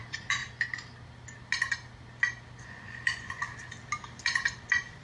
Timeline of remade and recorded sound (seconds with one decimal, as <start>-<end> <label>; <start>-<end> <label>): 0.0-0.4 remade; 0.4-2.6 recorded; 2.6-3.4 remade; 3.4-5.0 recorded